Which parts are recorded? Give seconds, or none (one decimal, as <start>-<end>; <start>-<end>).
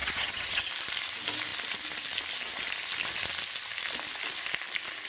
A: 0.7-5.1